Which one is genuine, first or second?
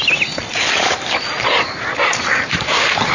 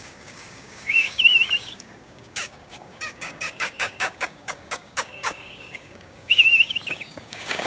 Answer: first